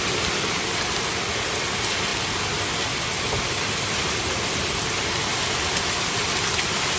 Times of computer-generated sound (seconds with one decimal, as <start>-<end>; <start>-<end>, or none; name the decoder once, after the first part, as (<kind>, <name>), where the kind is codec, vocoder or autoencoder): none